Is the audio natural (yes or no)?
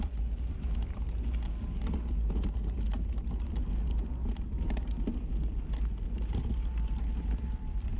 yes